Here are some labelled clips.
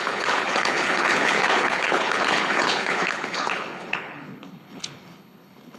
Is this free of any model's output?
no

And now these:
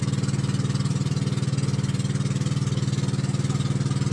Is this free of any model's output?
yes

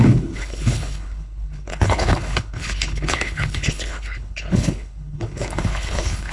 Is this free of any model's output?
no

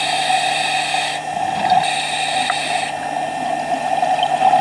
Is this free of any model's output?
yes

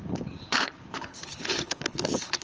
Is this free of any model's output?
no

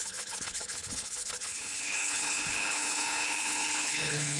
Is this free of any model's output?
no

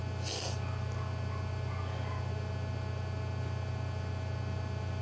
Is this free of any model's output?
yes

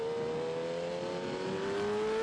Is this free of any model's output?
yes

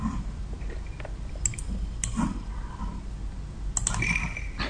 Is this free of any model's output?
yes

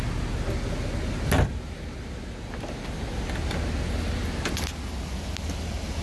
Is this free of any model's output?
yes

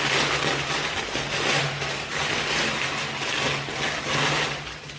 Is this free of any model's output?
yes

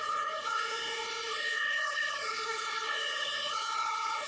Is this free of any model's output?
no